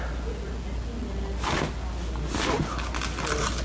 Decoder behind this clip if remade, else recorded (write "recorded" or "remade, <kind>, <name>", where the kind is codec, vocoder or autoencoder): recorded